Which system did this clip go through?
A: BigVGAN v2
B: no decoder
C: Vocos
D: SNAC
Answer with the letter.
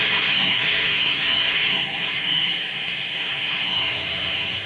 D